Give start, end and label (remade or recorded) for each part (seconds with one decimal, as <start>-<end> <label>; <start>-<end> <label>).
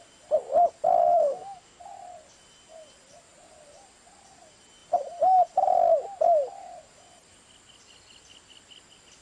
0.0-1.0 recorded; 1.0-1.8 remade; 1.8-9.2 recorded